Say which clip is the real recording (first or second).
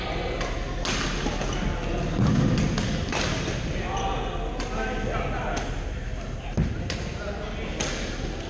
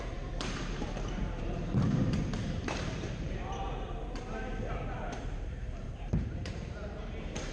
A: first